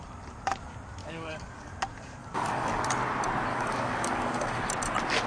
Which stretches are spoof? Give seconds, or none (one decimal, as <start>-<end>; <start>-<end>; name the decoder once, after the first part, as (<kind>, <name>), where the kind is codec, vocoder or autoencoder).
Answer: 1.0-1.7 (codec, DAC); 2.2-2.8; 3.5-4.7